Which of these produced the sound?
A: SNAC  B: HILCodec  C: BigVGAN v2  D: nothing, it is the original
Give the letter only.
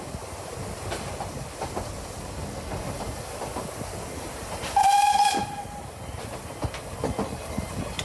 D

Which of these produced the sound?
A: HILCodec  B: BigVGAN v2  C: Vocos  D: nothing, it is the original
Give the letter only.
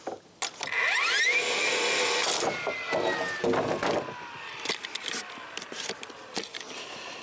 D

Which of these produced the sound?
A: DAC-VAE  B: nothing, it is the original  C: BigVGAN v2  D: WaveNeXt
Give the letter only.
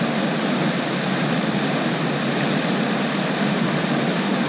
B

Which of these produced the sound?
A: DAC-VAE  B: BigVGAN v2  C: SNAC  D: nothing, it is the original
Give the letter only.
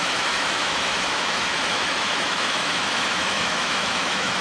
A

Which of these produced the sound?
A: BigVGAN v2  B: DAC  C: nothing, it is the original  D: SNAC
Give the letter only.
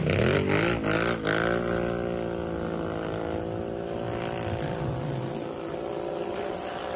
C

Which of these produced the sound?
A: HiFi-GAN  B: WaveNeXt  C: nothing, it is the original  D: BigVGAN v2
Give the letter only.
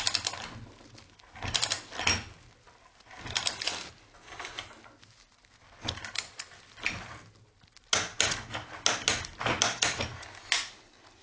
C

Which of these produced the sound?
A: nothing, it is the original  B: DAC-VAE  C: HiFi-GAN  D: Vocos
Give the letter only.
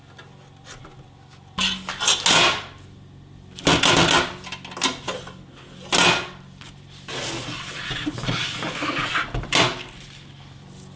A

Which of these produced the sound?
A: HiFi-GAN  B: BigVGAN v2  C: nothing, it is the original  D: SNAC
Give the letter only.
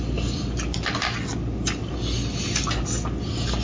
C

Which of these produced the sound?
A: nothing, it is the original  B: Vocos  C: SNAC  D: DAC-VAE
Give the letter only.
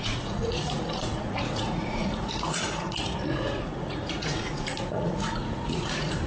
B